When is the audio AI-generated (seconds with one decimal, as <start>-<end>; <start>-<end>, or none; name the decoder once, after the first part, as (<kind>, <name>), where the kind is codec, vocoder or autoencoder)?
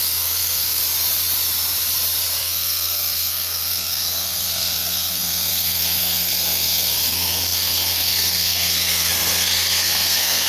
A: 0.0-0.8 (codec, SNAC); 2.4-10.5